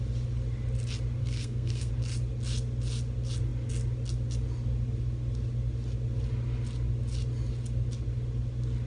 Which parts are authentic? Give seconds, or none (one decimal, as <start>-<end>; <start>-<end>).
0.0-1.2; 1.9-8.9

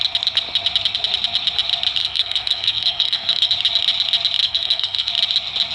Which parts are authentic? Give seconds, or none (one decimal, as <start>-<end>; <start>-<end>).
0.0-2.0; 3.5-4.4; 5.1-5.7

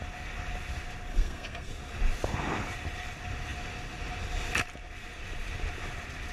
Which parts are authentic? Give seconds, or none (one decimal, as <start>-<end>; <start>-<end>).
0.0-1.1; 1.7-6.3

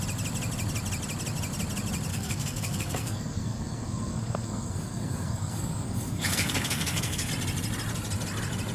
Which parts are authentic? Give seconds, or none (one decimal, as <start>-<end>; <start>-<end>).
0.0-2.1; 7.3-8.7

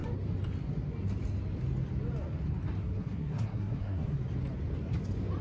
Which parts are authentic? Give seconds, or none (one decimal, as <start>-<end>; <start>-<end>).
0.0-2.8; 4.2-5.4